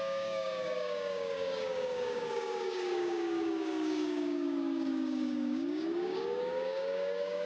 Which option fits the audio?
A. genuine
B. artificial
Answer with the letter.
B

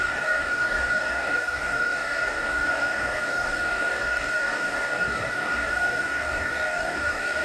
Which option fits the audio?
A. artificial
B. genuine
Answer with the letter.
A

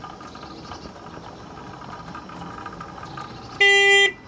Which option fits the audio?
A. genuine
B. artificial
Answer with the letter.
A